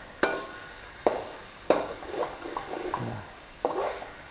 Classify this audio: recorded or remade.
remade